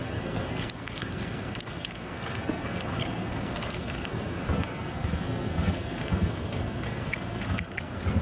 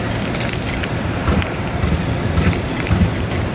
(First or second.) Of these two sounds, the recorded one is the second